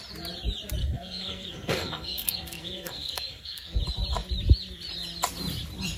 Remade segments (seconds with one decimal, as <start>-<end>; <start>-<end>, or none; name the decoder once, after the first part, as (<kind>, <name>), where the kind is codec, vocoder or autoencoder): 0.8-3.8 (codec, SNAC)

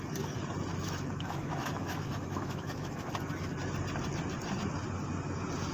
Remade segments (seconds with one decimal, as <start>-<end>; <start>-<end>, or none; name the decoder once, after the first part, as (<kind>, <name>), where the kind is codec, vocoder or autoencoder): 0.7-3.1 (autoencoder, DAC-VAE)

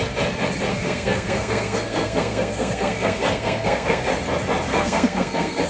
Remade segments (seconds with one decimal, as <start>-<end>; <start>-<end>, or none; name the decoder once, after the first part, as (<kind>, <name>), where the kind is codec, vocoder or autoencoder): 0.7-4.1 (codec, SNAC); 4.7-5.7

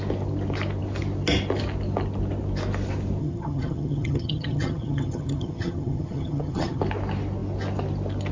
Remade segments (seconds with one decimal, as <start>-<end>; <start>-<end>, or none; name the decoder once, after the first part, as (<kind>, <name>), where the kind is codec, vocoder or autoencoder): 3.2-6.8 (vocoder, HiFi-GAN)